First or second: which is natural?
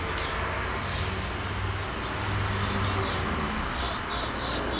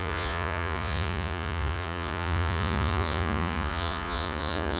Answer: first